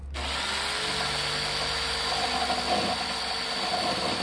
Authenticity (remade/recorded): recorded